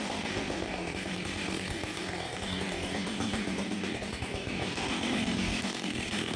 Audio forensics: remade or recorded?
remade